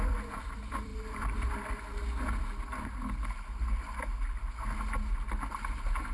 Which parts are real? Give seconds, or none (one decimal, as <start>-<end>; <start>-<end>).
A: 0.0-6.1